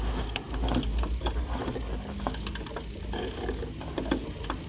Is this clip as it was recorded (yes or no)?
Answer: yes